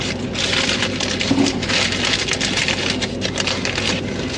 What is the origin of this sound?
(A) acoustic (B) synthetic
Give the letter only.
A